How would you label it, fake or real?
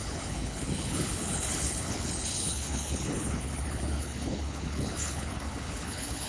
fake